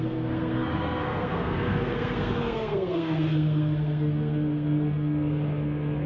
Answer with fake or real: fake